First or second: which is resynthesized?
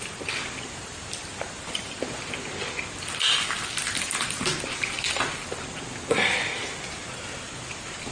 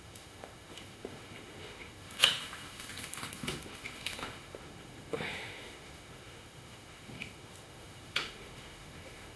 second